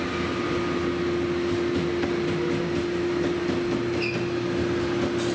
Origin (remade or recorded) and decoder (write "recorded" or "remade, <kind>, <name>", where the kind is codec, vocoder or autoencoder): recorded